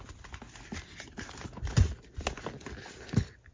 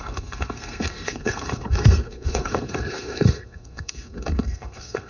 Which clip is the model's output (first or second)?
second